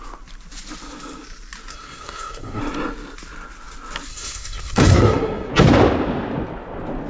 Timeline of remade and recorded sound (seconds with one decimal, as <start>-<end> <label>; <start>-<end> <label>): 0.0-1.7 recorded; 1.7-2.6 remade; 2.6-4.1 recorded; 4.1-5.5 remade; 5.5-7.1 recorded